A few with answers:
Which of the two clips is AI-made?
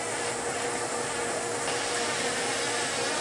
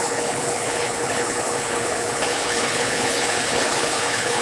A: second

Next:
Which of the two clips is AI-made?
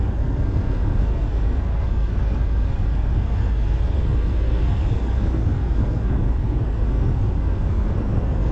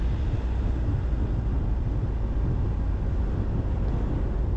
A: first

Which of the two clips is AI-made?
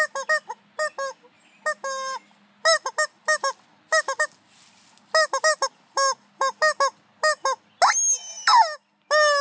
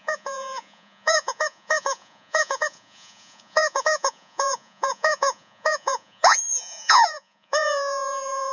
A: second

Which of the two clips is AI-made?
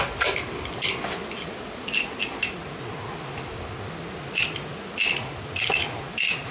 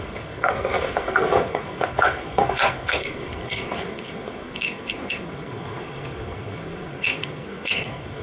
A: second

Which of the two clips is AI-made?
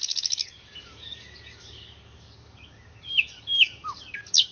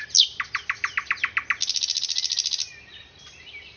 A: first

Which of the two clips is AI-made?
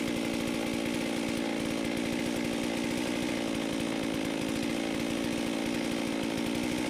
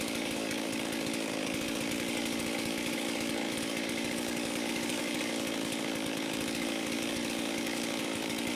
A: second